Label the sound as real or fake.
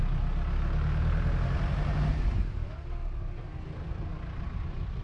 real